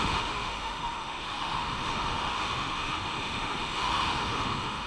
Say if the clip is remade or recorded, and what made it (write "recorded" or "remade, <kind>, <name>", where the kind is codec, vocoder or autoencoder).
remade, autoencoder, DAC-VAE